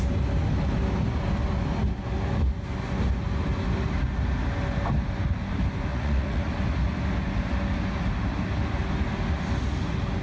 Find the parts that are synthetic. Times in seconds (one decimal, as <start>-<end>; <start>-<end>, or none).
5.9-6.5